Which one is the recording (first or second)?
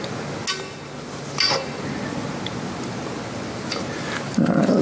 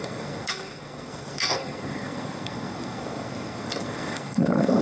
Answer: first